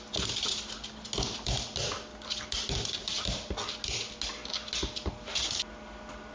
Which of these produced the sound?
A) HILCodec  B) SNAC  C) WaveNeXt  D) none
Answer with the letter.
D